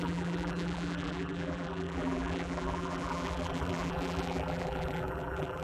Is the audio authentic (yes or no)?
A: no